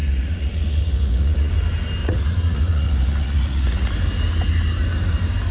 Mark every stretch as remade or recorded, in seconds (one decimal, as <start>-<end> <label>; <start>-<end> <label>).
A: 0.0-1.5 remade; 1.5-2.0 recorded; 2.0-3.9 remade; 3.9-5.5 recorded